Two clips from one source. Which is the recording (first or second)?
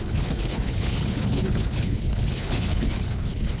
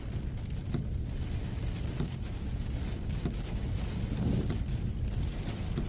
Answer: second